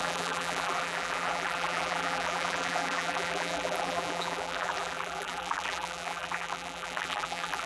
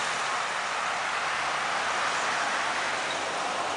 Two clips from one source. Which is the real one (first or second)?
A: second